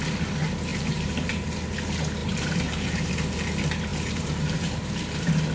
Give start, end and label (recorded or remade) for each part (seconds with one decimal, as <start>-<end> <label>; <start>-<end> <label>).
0.0-0.7 recorded; 0.7-1.3 remade; 1.3-2.2 recorded; 2.2-3.1 remade; 3.1-3.9 recorded; 3.9-4.9 remade; 4.9-5.5 recorded